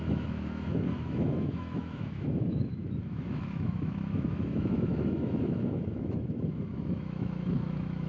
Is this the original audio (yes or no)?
no